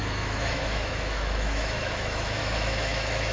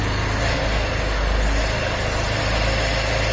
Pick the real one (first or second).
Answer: second